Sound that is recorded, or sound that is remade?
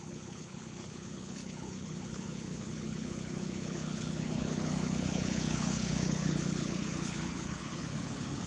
remade